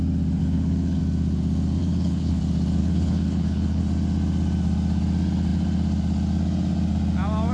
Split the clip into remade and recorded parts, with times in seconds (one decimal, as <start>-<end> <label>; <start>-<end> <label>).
0.0-0.4 recorded; 0.4-1.0 remade; 1.0-1.8 recorded; 1.8-2.4 remade; 2.4-2.8 recorded; 2.8-3.8 remade; 3.8-7.5 recorded